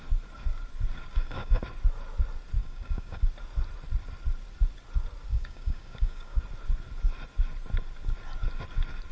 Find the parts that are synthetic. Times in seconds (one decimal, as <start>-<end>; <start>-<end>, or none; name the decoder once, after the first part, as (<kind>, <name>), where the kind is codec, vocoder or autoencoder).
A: 1.1-1.6 (codec, DAC); 2.6-3.2; 5.3-6.4

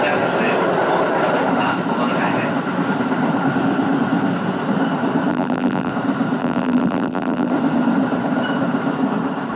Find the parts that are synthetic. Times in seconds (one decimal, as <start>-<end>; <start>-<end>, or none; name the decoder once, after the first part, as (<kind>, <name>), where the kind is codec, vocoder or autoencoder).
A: 5.3-5.9 (vocoder, BigVGAN v2); 6.4-7.5